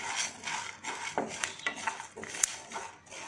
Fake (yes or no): no